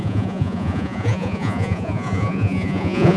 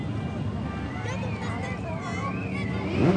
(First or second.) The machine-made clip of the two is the first